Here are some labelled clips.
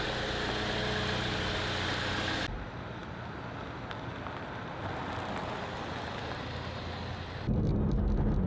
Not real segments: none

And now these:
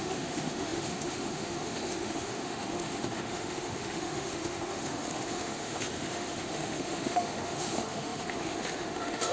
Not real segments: 0.0-9.3 (autoencoder, DAC-VAE)

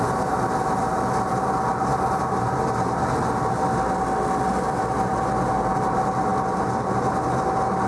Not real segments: none

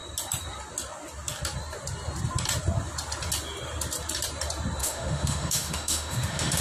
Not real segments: 4.8-6.6 (autoencoder, DAC-VAE)

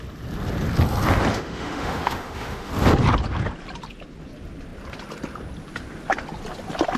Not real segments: 1.3-2.7 (autoencoder, DAC-VAE)

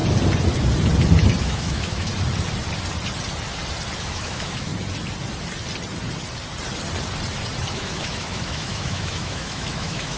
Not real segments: 1.4-2.1 (autoencoder, DAC-VAE); 4.0-4.7; 7.7-10.2